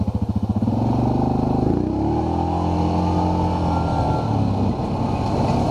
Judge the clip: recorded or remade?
recorded